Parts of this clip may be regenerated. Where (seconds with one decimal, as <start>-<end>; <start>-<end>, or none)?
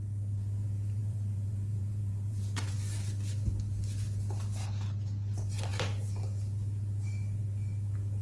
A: 1.0-2.7